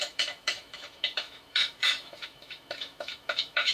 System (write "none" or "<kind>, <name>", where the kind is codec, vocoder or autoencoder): autoencoder, DAC-VAE